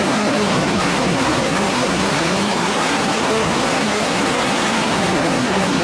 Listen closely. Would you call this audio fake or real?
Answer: fake